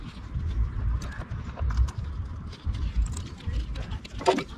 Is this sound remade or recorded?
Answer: recorded